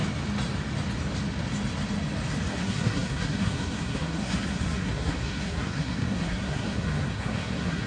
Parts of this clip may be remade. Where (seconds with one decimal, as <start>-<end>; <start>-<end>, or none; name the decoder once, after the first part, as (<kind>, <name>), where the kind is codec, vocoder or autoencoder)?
2.5-7.9 (codec, SNAC)